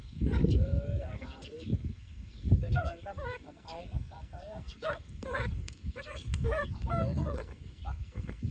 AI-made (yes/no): yes